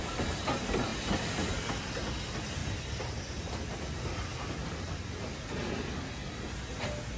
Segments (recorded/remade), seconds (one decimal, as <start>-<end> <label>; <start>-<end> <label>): 0.0-7.2 recorded